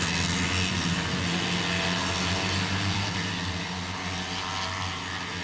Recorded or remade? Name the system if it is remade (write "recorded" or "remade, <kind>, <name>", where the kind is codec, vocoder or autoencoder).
recorded